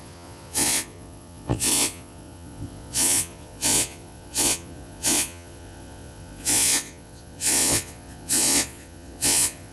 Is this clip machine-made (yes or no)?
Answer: yes